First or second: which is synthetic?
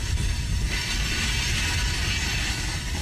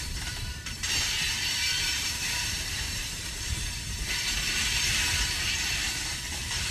second